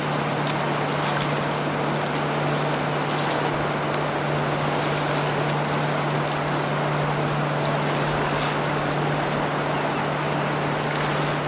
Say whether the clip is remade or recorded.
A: recorded